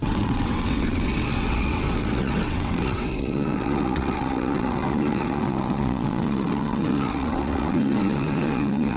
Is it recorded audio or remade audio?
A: remade